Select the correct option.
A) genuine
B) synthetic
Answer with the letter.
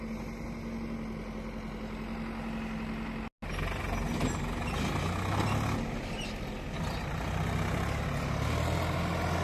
A